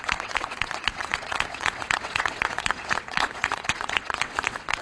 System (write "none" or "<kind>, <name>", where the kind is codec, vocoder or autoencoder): vocoder, WaveNeXt